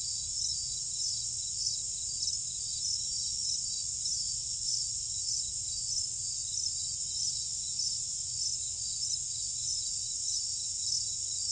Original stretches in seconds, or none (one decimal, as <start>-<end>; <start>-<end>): 0.0-0.5; 1.1-11.5